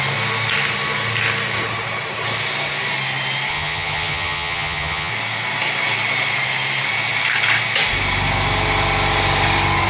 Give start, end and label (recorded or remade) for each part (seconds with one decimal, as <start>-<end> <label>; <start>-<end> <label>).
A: 0.0-3.5 recorded; 3.5-5.1 remade; 5.1-9.9 recorded